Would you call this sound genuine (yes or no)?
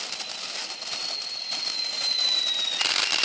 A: yes